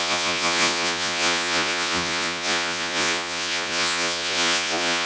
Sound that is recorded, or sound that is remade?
remade